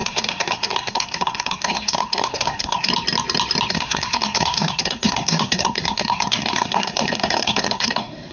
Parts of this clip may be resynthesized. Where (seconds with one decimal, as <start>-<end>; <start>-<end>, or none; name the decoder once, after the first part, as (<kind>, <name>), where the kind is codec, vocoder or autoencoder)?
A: 0.0-2.9 (codec, SNAC); 3.7-8.3